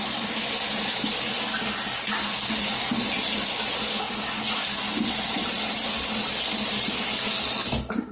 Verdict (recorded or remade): recorded